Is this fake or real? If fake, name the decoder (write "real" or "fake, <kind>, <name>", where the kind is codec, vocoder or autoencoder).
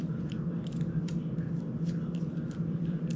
fake, vocoder, BigVGAN v2